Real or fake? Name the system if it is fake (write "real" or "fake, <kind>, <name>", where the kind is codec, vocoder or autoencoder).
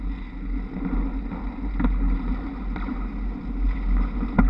real